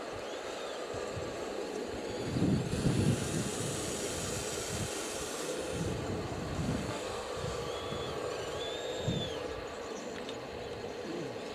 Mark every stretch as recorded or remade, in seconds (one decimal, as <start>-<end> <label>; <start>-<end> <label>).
0.0-6.6 recorded; 6.6-7.3 remade; 7.3-11.5 recorded